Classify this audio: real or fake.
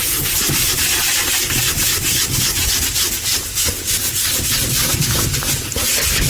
real